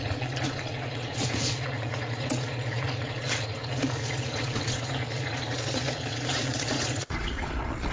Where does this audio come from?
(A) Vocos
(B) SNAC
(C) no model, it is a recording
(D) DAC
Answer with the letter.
A